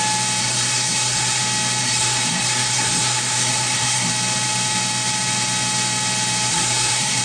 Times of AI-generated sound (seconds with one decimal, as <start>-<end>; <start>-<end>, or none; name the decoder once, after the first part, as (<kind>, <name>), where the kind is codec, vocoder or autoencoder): 0.4-1.4 (codec, SNAC); 1.8-4.1; 6.5-7.2